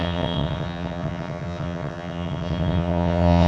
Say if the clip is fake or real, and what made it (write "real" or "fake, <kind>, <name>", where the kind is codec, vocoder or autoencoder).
fake, vocoder, WaveNeXt